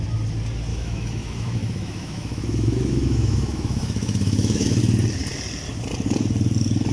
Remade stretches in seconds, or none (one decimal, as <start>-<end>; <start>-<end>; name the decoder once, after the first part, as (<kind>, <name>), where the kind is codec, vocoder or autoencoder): 0.7-4.8 (autoencoder, DAC-VAE)